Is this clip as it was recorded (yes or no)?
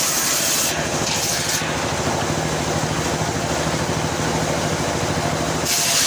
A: yes